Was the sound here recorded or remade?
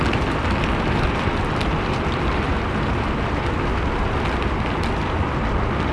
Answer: recorded